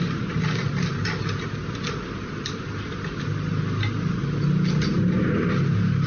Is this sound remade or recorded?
recorded